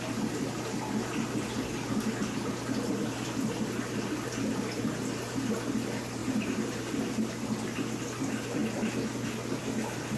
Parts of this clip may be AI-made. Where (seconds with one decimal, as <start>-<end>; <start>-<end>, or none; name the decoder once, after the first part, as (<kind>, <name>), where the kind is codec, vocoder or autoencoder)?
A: 6.2-7.0 (vocoder, BigVGAN v2)